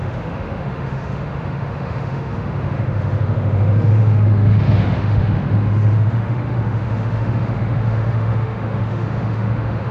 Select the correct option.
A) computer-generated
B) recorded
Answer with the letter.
A